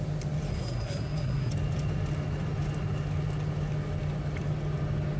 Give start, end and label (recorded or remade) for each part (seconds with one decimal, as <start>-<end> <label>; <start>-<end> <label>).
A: 0.0-0.5 recorded; 0.5-1.5 remade; 1.5-5.2 recorded